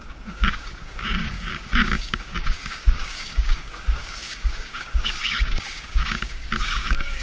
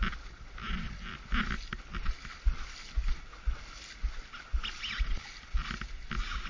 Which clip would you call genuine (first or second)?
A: second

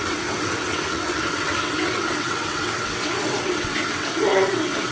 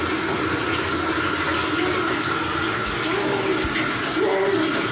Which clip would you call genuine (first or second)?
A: second